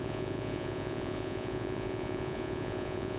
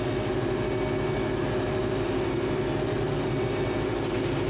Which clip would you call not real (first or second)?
first